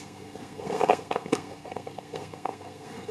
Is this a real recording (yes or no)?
no